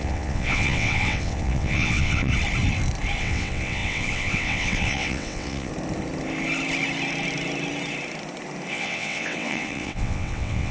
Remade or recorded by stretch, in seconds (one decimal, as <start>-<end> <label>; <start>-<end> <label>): 0.0-2.3 remade; 2.3-3.2 recorded; 3.2-5.7 remade; 5.7-8.7 recorded; 8.7-10.7 remade